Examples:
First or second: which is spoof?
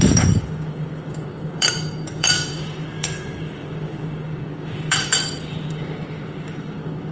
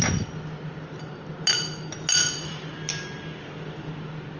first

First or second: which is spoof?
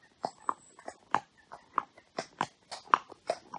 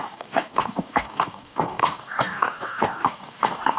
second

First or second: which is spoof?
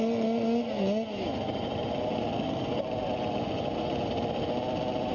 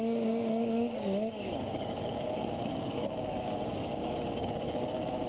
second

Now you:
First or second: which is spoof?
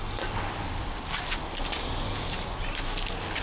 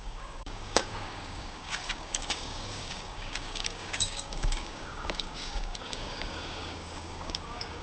second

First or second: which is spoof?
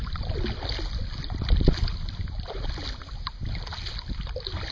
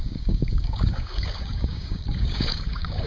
second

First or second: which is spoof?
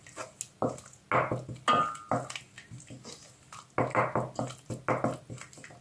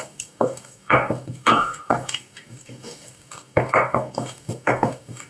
second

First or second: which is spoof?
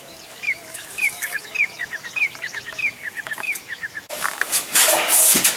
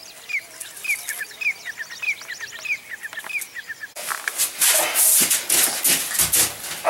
first